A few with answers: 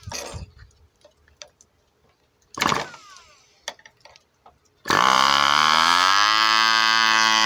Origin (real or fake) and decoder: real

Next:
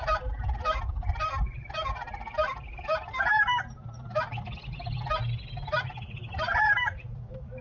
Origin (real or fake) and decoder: real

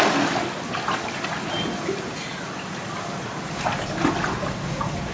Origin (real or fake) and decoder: real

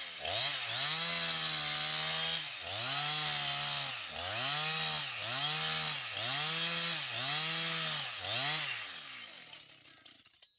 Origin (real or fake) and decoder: real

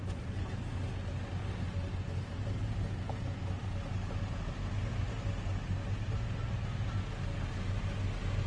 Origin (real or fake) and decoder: real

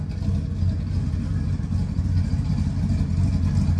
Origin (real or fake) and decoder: real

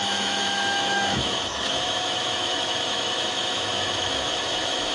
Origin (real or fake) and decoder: fake, autoencoder, DAC-VAE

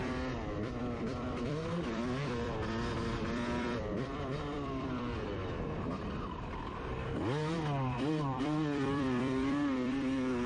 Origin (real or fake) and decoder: fake, vocoder, BigVGAN v2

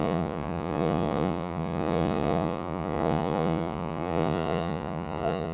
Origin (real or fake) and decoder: fake, vocoder, Vocos